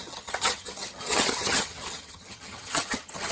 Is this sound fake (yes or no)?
yes